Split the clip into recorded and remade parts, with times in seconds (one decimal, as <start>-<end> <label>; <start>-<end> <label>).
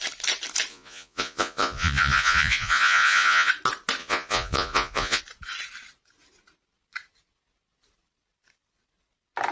0.0-0.7 recorded; 0.7-3.5 remade; 3.5-4.0 recorded; 4.0-5.2 remade; 5.2-9.5 recorded